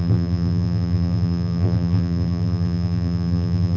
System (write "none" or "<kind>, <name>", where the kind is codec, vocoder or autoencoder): vocoder, BigVGAN v2